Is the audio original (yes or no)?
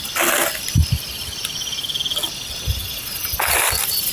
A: yes